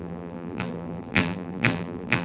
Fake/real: fake